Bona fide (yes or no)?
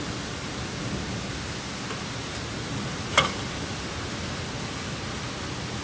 yes